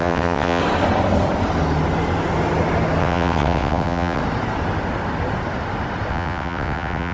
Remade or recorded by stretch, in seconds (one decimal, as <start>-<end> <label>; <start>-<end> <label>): 0.0-0.6 remade; 0.6-3.0 recorded; 3.0-4.2 remade; 4.2-6.1 recorded; 6.1-7.1 remade